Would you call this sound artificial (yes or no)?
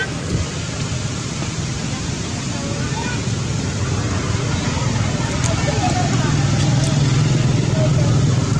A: no